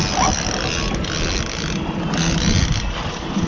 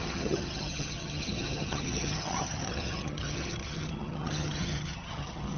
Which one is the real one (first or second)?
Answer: first